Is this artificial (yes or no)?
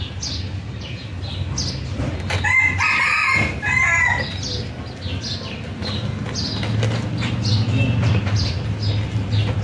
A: no